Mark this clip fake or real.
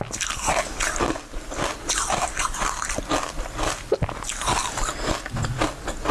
real